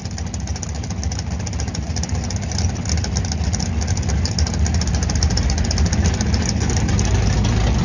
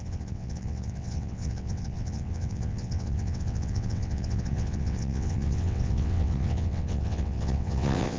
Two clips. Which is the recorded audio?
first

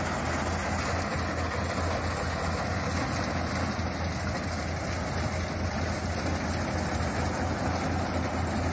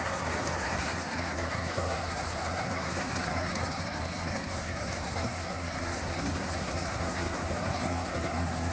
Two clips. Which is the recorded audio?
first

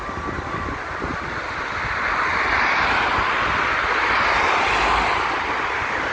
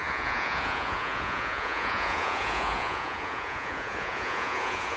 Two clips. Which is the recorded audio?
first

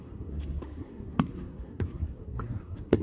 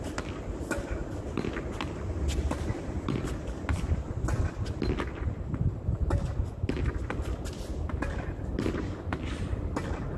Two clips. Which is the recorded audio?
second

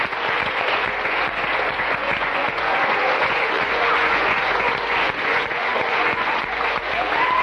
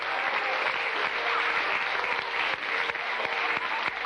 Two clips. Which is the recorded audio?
second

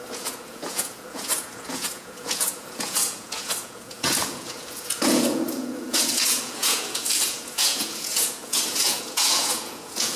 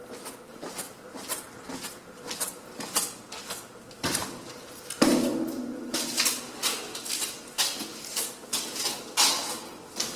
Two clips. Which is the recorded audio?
second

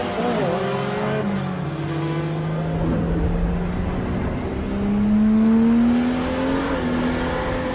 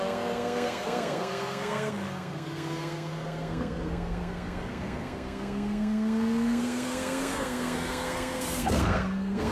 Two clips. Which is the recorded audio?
first